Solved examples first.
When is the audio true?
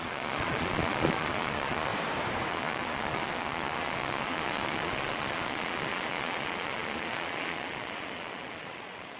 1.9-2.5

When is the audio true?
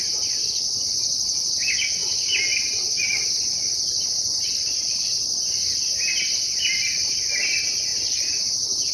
0.0-8.9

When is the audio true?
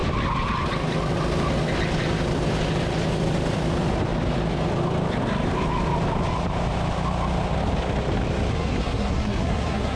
0.0-8.5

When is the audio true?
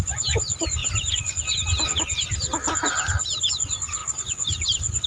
0.0-4.0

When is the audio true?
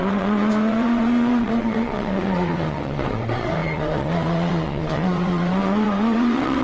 none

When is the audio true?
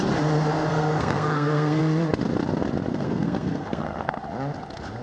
0.0-0.7; 1.8-2.9; 4.1-5.0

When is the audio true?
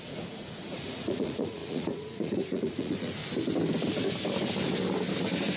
3.2-5.6